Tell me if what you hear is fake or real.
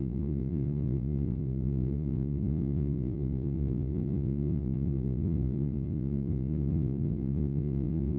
fake